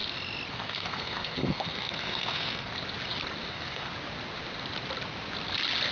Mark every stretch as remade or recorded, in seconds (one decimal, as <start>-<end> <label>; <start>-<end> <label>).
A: 0.0-0.5 recorded; 0.5-2.7 remade; 2.7-3.5 recorded; 3.5-3.9 remade; 3.9-5.9 recorded